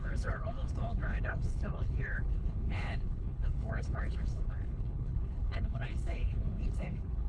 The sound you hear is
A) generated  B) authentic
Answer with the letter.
A